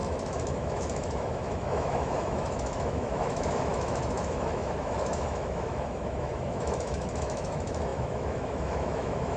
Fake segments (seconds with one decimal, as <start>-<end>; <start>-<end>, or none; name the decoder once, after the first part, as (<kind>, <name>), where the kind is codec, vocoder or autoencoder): 0.0-9.4 (autoencoder, DAC-VAE)